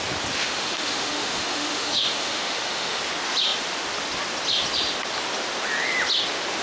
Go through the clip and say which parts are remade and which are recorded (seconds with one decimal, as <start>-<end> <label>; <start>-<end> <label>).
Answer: 0.0-0.4 recorded; 0.4-3.0 remade; 3.0-6.6 recorded